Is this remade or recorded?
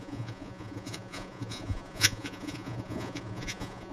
remade